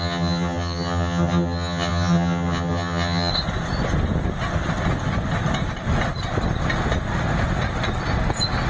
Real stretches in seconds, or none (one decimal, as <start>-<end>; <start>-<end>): 3.3-8.7